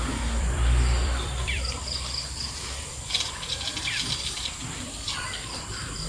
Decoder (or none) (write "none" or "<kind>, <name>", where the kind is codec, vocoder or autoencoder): vocoder, BigVGAN v2